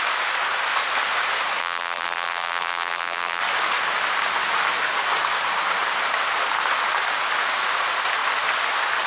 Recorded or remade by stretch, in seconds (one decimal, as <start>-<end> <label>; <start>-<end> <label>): 0.0-1.6 recorded; 1.6-3.4 remade; 3.4-9.1 recorded